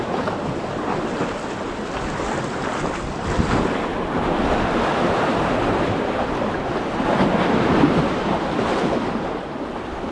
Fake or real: real